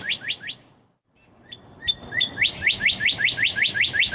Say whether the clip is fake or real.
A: real